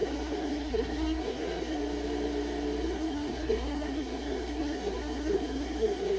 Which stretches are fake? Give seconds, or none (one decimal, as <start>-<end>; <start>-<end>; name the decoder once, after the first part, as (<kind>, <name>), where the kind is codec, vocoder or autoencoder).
0.0-1.8 (codec, SNAC); 2.8-6.2